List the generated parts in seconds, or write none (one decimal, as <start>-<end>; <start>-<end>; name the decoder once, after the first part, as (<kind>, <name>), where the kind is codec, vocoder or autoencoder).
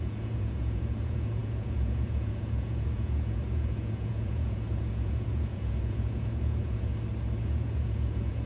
0.0-6.9 (vocoder, Vocos); 7.4-8.5